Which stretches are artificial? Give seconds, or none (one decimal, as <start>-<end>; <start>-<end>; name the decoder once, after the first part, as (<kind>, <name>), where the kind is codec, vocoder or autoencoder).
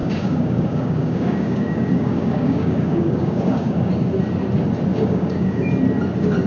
0.0-3.9 (codec, DAC); 4.9-5.7